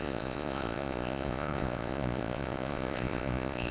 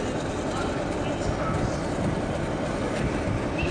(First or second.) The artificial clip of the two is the first